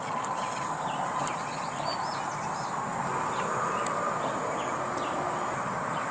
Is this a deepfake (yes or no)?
no